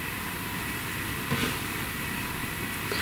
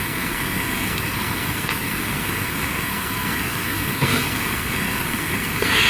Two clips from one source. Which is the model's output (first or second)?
second